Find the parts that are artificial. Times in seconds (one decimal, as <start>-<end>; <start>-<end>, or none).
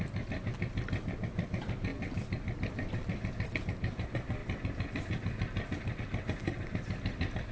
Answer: none